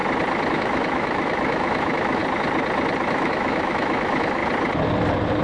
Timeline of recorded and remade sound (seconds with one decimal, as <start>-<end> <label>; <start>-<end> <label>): 0.0-0.5 recorded; 0.5-2.2 remade; 2.2-3.1 recorded; 3.1-4.4 remade; 4.4-5.4 recorded